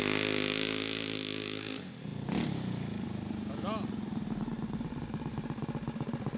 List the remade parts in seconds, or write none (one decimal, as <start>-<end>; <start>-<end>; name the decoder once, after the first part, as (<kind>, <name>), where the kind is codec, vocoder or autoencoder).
none